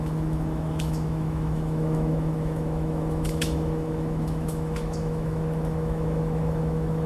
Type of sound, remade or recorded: remade